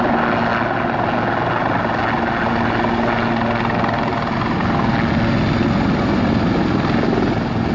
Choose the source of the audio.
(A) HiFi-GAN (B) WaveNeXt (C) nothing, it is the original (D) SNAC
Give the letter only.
C